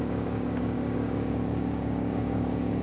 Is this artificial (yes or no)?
yes